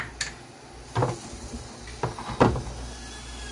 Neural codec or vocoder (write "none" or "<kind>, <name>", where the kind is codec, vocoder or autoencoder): none